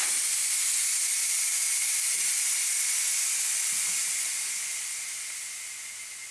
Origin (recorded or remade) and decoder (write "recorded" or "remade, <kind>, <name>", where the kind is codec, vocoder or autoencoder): recorded